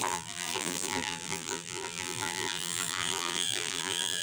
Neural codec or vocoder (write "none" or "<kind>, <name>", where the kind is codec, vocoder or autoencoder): vocoder, BigVGAN v2